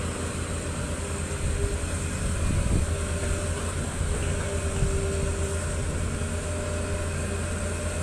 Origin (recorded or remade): recorded